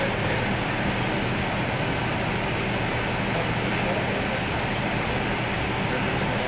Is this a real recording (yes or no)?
yes